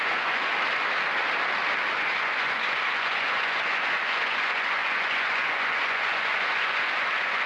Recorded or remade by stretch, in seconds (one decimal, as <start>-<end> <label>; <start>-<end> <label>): 0.0-0.5 remade; 0.5-1.9 recorded; 1.9-7.5 remade